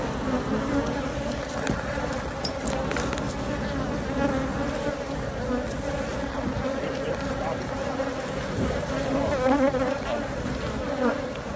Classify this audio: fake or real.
real